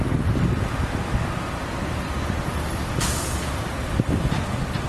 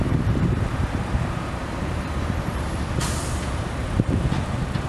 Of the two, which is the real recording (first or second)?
first